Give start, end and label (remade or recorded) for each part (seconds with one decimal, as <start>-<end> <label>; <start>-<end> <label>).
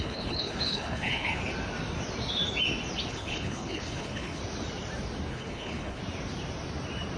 0.0-1.4 remade; 1.4-3.1 recorded; 3.1-4.4 remade; 4.4-5.3 recorded; 5.3-6.0 remade; 6.0-7.2 recorded